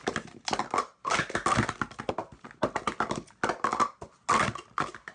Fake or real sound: real